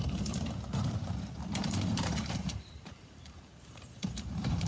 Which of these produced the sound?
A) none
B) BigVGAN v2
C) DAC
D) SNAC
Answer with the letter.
B